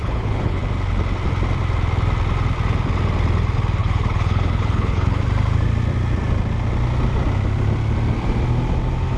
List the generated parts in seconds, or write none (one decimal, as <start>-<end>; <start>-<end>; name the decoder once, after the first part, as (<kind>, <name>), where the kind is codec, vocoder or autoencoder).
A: 0.0-0.6 (codec, HILCodec); 3.8-5.2